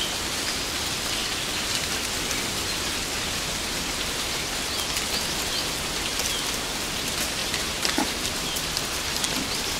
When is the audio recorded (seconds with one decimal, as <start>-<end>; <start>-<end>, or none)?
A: 0.0-7.4; 8.4-9.8